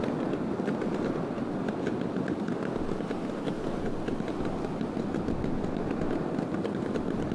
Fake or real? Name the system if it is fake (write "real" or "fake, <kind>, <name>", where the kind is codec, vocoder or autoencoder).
real